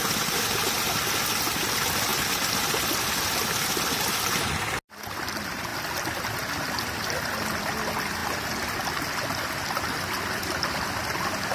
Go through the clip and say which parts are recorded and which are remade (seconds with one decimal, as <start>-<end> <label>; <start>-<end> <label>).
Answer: 0.0-11.5 recorded